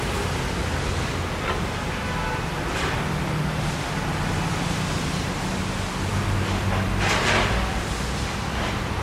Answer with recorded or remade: recorded